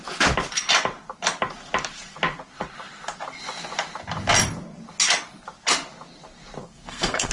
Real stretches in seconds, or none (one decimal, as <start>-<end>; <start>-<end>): 0.0-6.6